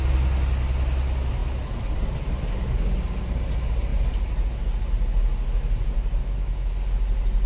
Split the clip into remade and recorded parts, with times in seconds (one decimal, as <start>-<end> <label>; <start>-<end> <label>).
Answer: 0.0-6.2 recorded; 6.2-6.7 remade; 6.7-7.5 recorded